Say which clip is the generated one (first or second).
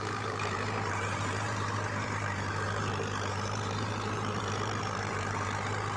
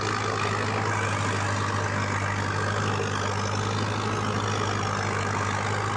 first